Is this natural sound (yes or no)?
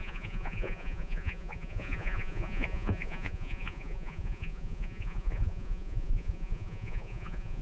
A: no